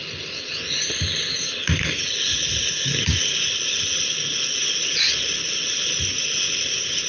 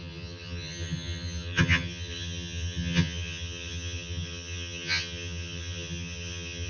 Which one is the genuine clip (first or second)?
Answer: first